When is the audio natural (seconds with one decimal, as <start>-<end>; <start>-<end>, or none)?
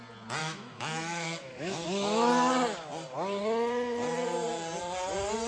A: 0.0-0.4; 2.3-5.5